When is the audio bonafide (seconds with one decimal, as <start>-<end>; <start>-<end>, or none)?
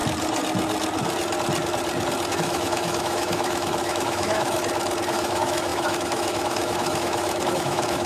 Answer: 0.0-2.3; 4.6-5.1